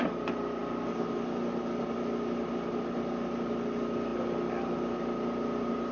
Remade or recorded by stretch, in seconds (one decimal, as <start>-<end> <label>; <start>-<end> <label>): 0.0-0.6 remade; 0.6-1.8 recorded; 1.8-4.1 remade; 4.1-4.8 recorded; 4.8-5.9 remade